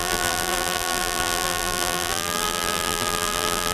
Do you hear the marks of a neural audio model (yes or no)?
yes